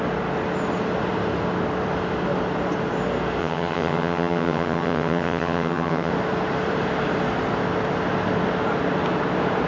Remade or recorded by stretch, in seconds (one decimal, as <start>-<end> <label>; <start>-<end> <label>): 0.0-3.4 recorded; 3.4-6.1 remade; 6.1-9.7 recorded